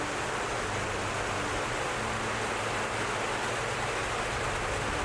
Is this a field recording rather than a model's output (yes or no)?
yes